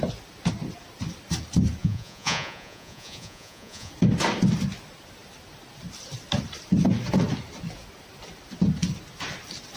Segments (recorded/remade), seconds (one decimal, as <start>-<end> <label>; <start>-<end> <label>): 0.0-1.8 recorded; 1.8-3.9 remade; 3.9-9.8 recorded